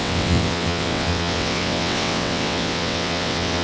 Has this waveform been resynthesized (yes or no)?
yes